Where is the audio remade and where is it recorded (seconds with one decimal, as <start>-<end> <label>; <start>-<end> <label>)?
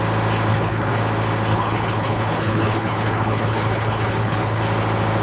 0.0-0.5 recorded; 0.5-1.0 remade; 1.0-1.5 recorded; 1.5-4.6 remade; 4.6-5.2 recorded